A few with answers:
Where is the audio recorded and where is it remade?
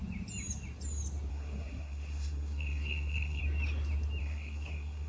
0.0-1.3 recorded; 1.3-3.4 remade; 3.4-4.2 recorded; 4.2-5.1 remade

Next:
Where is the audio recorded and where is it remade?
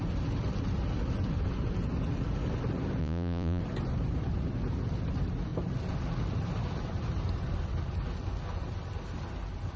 0.0-3.0 recorded; 3.0-3.6 remade; 3.6-9.8 recorded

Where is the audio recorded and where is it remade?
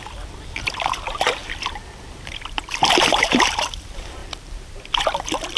0.0-2.6 recorded; 2.6-3.8 remade; 3.8-4.2 recorded; 4.2-4.8 remade; 4.8-5.6 recorded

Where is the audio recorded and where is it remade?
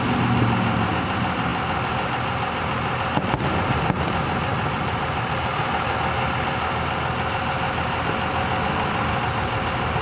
0.0-10.0 recorded